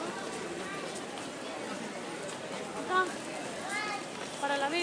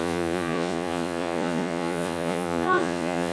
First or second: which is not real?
second